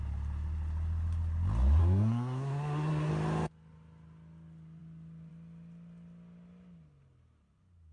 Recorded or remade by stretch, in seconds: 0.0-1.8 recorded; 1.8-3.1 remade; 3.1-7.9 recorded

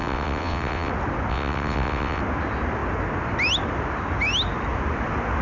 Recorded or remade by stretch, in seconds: 0.0-0.9 remade; 0.9-1.3 recorded; 1.3-2.2 remade; 2.2-5.4 recorded

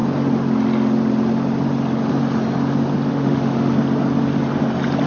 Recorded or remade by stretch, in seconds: 0.0-3.1 recorded; 3.1-3.7 remade; 3.7-5.1 recorded

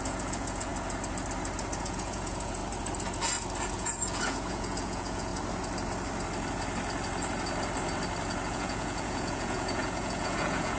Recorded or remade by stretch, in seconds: 0.0-0.7 remade; 0.7-1.8 recorded; 1.8-2.6 remade; 2.6-3.7 recorded; 3.7-5.3 remade; 5.3-8.5 recorded; 8.5-10.8 remade

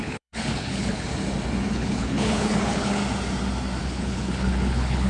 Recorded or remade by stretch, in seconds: 0.0-1.1 remade; 1.1-1.7 recorded; 1.7-3.0 remade; 3.0-3.8 recorded; 3.8-5.1 remade

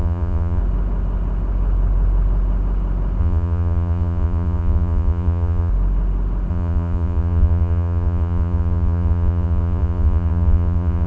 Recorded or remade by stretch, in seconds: 0.0-0.6 remade; 0.6-3.2 recorded; 3.2-5.7 remade; 5.7-6.5 recorded; 6.5-11.1 remade

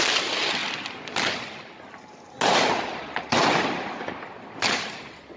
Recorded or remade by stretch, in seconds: 0.0-0.6 remade; 0.6-3.8 recorded; 3.8-5.4 remade

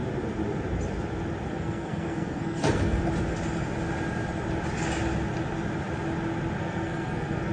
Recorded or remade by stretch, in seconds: 0.0-1.5 recorded; 1.5-3.0 remade; 3.0-6.6 recorded; 6.6-7.5 remade